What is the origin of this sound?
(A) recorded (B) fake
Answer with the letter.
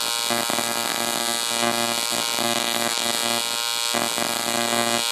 A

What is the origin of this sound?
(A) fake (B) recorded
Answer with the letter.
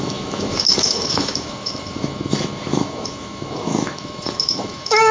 A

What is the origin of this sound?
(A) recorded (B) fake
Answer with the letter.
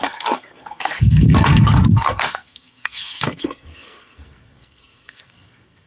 B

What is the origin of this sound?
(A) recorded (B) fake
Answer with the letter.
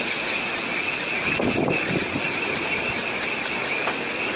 A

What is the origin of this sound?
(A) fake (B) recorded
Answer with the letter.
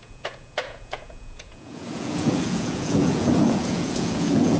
A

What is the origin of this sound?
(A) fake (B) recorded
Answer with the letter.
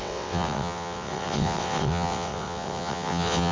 A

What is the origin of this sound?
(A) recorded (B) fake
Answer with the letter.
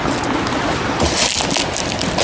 A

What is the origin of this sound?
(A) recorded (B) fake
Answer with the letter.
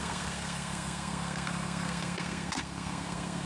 B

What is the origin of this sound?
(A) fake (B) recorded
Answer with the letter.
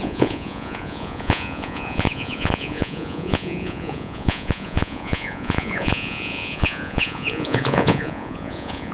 A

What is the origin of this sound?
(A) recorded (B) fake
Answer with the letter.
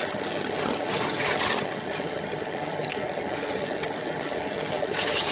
B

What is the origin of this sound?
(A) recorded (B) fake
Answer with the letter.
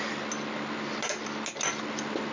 A